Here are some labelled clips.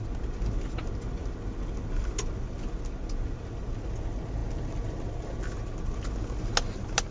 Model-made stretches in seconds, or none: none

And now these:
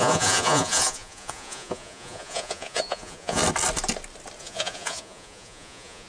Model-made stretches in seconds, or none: 0.0-3.4; 4.4-6.1

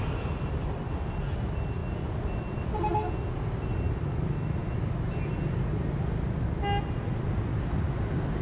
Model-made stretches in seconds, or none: none

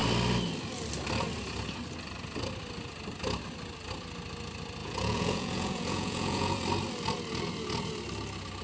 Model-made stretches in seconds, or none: 4.8-6.6

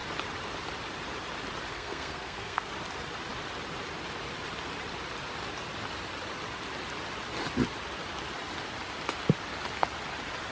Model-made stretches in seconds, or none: 1.7-2.7

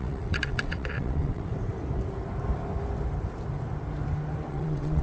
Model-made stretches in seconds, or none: 0.0-1.5; 4.5-5.0

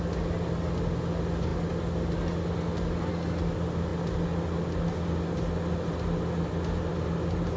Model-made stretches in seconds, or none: 6.9-7.6